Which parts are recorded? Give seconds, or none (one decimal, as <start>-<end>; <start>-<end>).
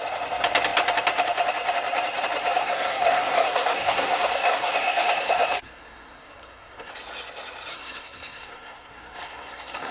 0.0-2.6; 6.9-7.7